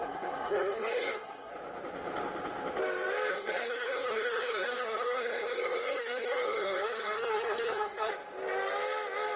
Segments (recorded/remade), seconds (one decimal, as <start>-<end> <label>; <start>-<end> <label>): 0.0-1.5 remade; 1.5-3.3 recorded; 3.3-8.1 remade; 8.1-9.4 recorded